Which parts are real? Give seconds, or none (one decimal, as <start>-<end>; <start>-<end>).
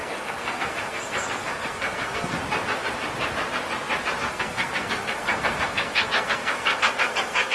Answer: 2.4-4.2